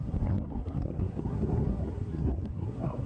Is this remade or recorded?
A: remade